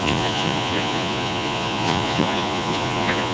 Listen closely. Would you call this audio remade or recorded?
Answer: remade